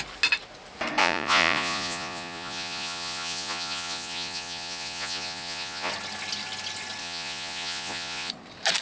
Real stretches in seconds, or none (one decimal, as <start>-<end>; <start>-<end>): 0.0-1.0; 5.9-7.0; 8.3-8.8

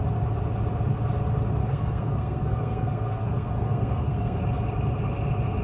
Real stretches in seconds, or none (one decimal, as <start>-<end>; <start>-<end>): 0.0-1.6; 4.4-5.6

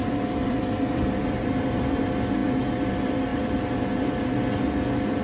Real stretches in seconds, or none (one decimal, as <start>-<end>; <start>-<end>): 2.0-5.2

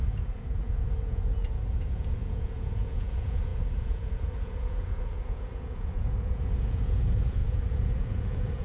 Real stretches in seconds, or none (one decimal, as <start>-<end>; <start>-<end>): none

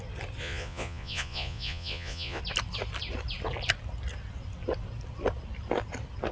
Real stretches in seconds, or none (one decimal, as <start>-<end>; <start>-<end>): 0.0-0.4; 2.4-6.3

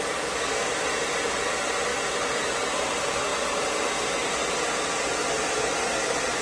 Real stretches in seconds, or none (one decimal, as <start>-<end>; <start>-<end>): 3.3-5.0

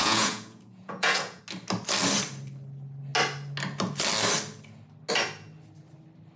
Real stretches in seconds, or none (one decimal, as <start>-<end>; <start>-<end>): 1.4-6.4

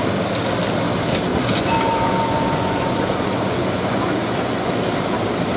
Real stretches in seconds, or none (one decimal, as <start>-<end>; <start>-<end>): 0.0-1.3; 4.7-5.6